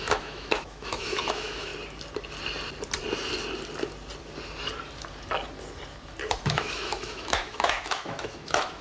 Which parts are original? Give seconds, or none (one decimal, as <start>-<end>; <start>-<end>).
1.7-6.4

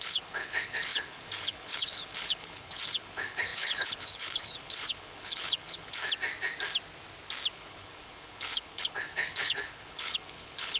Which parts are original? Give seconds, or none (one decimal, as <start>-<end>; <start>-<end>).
6.0-7.5

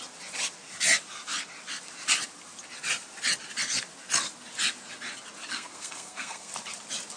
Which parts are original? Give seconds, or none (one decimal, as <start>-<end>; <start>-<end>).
0.0-5.5; 6.5-7.2

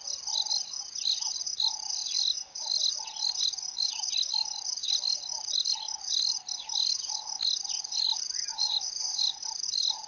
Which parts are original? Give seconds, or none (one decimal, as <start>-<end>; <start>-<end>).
0.0-8.5; 9.2-10.1

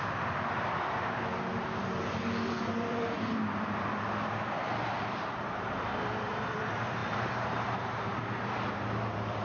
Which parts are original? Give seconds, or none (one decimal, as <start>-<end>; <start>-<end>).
none

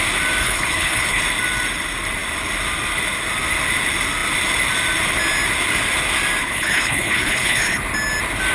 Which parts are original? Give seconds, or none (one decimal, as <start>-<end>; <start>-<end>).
0.0-0.4; 1.2-6.4; 7.8-8.5